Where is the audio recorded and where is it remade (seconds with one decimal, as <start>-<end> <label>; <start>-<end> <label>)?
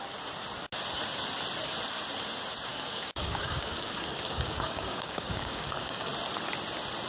0.0-2.7 recorded; 2.7-6.1 remade; 6.1-7.1 recorded